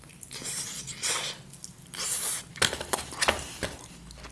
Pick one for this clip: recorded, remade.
recorded